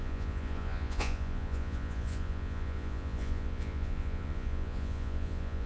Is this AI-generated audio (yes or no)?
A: yes